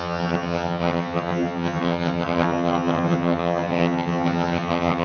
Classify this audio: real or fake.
fake